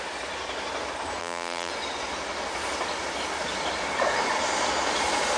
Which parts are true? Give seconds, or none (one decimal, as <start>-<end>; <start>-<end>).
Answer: 0.0-1.2; 1.7-5.4